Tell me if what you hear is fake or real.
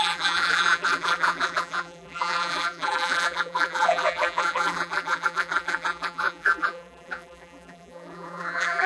fake